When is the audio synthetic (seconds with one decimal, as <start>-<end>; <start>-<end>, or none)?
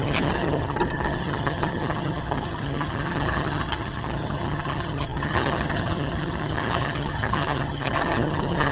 0.0-8.7